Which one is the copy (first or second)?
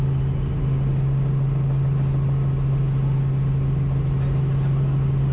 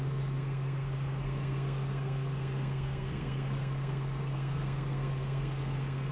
second